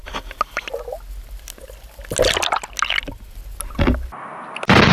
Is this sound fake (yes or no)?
no